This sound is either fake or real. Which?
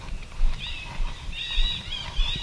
real